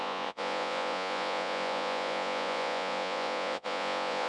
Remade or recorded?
remade